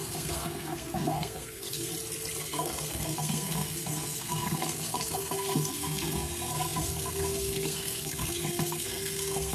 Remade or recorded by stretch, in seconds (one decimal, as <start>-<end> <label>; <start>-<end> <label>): 0.0-1.9 remade; 1.9-2.4 recorded; 2.4-9.5 remade